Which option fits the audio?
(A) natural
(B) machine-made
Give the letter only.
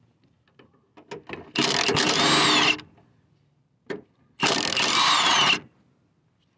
A